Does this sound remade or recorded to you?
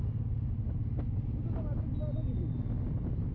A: recorded